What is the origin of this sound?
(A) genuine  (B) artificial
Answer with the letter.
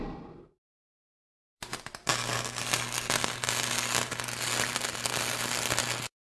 A